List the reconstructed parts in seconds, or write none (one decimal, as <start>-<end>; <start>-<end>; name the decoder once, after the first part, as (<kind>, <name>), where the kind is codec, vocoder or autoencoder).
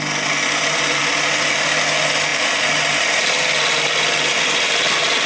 none